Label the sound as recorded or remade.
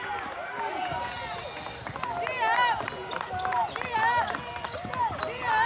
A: recorded